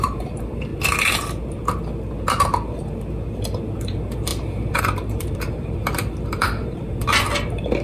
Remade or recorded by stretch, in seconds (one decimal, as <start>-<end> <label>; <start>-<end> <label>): 0.0-0.7 remade; 0.7-3.8 recorded; 3.8-7.8 remade